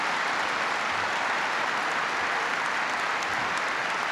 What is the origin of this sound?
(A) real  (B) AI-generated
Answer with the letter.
A